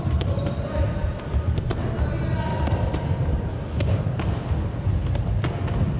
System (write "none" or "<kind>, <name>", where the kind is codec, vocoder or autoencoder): none